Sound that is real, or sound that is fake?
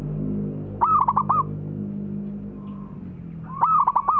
real